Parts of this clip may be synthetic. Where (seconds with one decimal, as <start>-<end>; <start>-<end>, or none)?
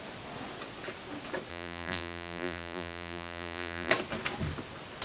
1.5-3.9